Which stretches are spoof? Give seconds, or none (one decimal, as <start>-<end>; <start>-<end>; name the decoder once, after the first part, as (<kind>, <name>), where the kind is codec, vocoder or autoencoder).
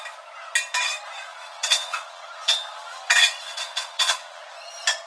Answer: 1.3-4.4 (vocoder, WaveNeXt)